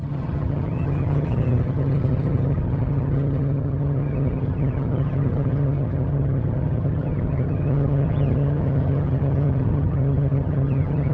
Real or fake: fake